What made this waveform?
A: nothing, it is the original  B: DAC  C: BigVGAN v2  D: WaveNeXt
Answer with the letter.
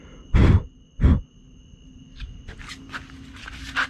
A